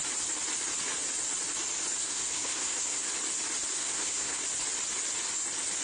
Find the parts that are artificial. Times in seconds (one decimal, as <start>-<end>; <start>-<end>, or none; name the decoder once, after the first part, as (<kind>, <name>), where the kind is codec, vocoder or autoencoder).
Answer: 2.0-3.1 (codec, SNAC); 3.7-4.4

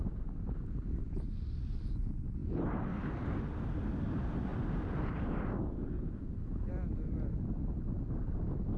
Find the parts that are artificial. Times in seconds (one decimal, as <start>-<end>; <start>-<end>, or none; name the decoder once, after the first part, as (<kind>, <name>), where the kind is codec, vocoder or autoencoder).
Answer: none

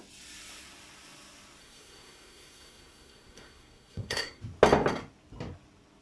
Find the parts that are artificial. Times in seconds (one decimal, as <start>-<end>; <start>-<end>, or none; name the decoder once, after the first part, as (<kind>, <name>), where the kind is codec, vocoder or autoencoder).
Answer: 1.6-4.4 (codec, SNAC)

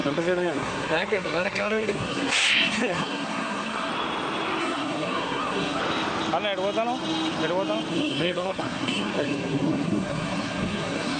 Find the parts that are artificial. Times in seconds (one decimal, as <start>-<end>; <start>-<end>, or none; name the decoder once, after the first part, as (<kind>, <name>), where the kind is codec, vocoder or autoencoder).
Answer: 0.0-3.9 (codec, SNAC); 4.6-5.8; 7.9-11.2